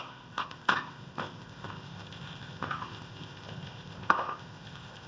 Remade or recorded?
remade